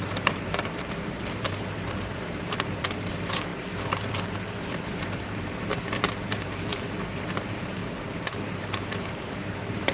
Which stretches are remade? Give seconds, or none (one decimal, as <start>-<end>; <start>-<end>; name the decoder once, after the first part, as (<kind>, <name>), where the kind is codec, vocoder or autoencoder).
0.0-3.5 (vocoder, BigVGAN v2); 4.5-6.7; 7.2-7.8; 8.3-9.9